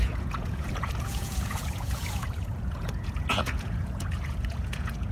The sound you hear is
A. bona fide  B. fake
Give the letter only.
B